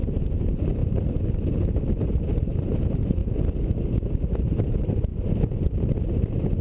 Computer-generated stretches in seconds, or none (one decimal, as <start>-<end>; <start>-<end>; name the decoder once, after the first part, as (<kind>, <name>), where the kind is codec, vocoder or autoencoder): 0.0-0.8 (vocoder, BigVGAN v2); 2.8-3.2; 4.4-5.1; 5.8-6.6